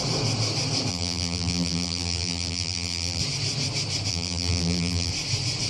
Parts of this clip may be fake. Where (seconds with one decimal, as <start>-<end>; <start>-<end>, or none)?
0.9-3.2; 4.1-5.1